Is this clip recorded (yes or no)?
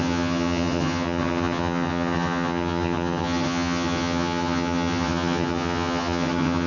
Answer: no